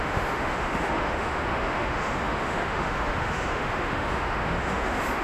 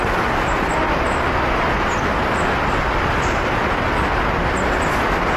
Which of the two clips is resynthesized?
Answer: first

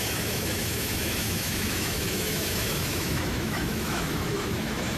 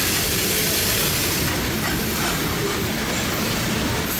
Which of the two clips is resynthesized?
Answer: first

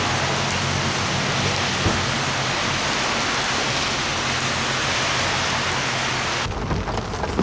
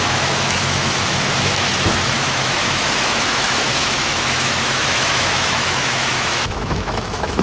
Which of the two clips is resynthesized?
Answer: second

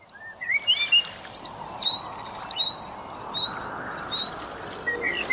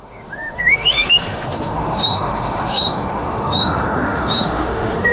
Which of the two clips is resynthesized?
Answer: second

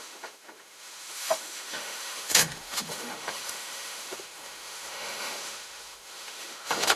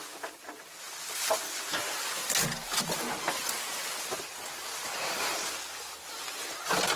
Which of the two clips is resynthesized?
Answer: first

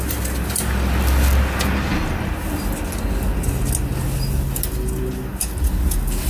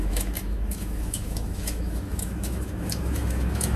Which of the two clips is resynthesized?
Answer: second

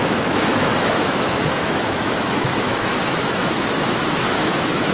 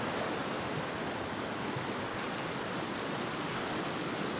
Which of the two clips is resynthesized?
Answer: first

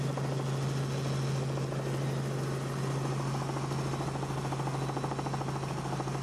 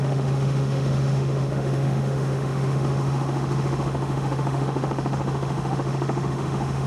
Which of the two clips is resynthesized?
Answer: second